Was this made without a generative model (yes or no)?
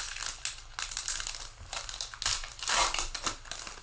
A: yes